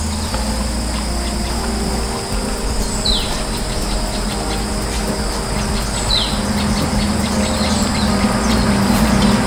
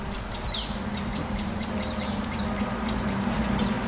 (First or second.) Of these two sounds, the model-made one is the second